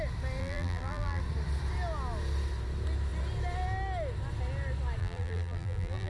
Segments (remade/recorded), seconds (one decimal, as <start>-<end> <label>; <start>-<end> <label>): 0.0-0.4 recorded; 0.4-1.2 remade; 1.2-5.0 recorded; 5.0-6.1 remade

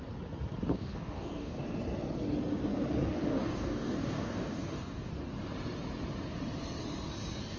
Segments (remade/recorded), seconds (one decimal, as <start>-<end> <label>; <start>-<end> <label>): 0.0-0.7 recorded; 0.7-1.6 remade; 1.6-3.1 recorded; 3.1-5.1 remade; 5.1-7.6 recorded

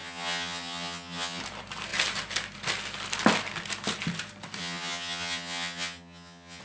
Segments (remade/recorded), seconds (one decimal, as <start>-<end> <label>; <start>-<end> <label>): 0.0-1.4 remade; 1.4-4.6 recorded; 4.6-6.6 remade

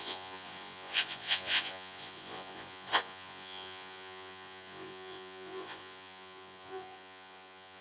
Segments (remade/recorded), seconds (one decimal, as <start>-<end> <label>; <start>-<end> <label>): 0.0-7.8 remade